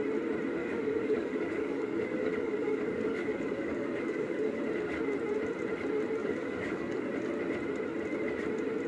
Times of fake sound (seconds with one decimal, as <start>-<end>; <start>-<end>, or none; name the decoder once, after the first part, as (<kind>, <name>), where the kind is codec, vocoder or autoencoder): 0.6-4.6 (codec, DAC); 6.2-7.1